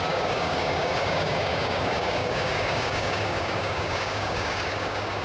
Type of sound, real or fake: fake